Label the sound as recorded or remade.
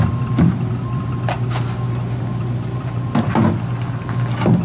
recorded